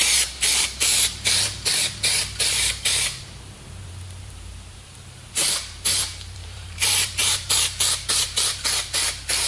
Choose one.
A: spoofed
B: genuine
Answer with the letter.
A